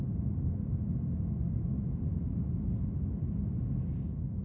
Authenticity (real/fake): real